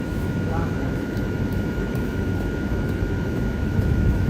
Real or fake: fake